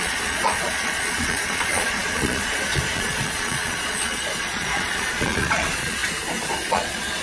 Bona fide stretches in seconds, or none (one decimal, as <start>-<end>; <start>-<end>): 6.0-6.7